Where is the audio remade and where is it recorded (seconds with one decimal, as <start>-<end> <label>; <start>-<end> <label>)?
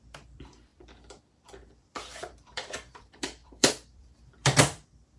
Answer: 0.0-5.2 remade